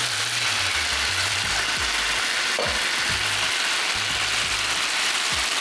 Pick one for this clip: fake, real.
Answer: real